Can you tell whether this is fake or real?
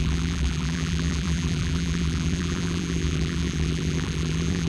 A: fake